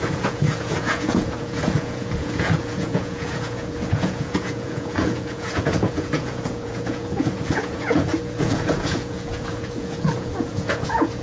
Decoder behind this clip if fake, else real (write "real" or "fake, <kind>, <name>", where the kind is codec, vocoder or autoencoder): fake, vocoder, Vocos